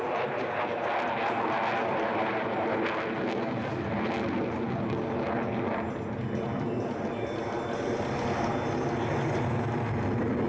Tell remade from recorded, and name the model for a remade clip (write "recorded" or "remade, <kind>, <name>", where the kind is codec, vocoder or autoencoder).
recorded